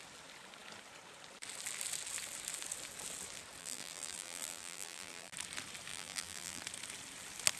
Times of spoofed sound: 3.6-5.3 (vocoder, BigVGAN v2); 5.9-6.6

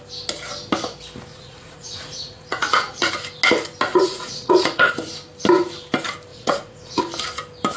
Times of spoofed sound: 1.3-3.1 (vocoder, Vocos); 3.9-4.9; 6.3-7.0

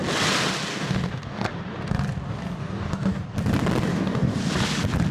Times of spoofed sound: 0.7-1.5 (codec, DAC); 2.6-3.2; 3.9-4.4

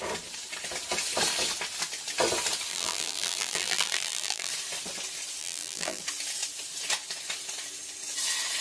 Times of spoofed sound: 2.7-4.5 (vocoder, BigVGAN v2); 5.4-6.0

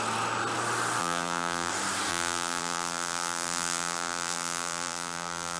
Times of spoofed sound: 1.0-1.7 (vocoder, BigVGAN v2); 2.1-5.6

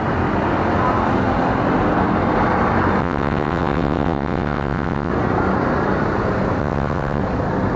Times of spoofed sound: 3.0-5.1 (vocoder, WaveNeXt); 6.6-7.2

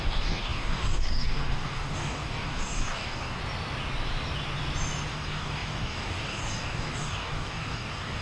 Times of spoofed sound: 0.0-3.4 (codec, DAC); 5.1-8.2

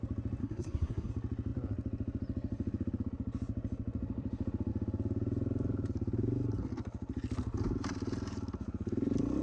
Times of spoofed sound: 0.4-1.1 (codec, SNAC)